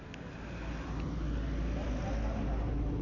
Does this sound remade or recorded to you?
recorded